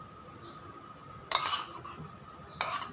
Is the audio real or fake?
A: real